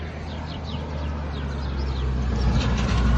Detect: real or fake real